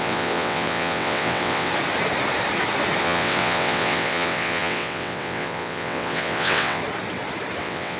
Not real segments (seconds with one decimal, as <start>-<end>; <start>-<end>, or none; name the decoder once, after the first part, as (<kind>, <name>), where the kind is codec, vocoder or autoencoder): 0.0-1.7 (vocoder, WaveNeXt); 3.0-6.8; 7.6-8.0